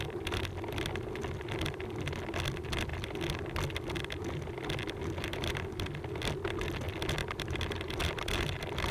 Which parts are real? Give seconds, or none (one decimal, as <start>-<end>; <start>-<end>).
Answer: 0.0-7.2; 8.5-8.9